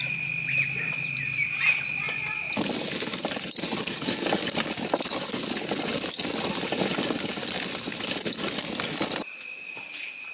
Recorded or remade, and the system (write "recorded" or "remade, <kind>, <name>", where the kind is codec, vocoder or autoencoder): recorded